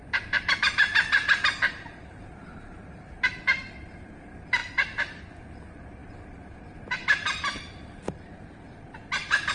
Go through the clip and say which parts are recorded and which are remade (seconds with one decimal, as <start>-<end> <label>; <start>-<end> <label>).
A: 0.0-9.5 remade